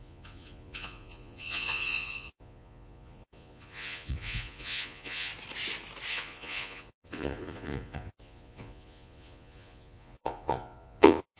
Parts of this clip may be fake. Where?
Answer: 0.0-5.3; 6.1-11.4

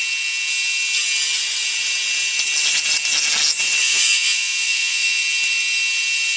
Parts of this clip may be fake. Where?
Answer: 3.8-5.2

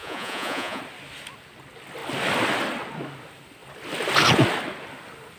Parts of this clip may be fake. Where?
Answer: 0.0-0.8

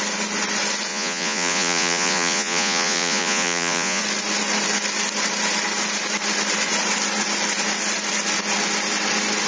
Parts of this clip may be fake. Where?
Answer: 0.9-4.0

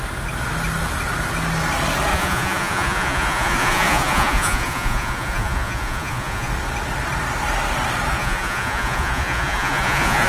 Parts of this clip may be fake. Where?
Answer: 2.1-6.5; 8.1-10.3

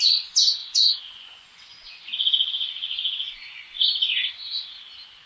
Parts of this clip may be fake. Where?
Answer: 0.6-3.8